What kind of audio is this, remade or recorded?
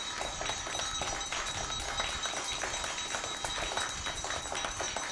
recorded